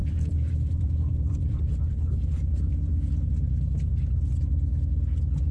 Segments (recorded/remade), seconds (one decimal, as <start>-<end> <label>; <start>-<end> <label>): 0.0-1.6 remade; 1.6-5.5 recorded